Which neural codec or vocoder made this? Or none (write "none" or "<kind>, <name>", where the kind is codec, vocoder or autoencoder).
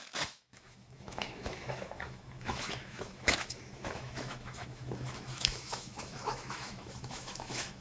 autoencoder, DAC-VAE